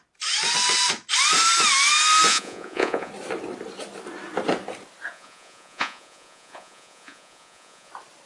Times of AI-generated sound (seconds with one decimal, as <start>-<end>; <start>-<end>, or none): 2.3-3.1; 5.1-7.9